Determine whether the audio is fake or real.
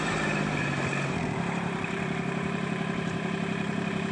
fake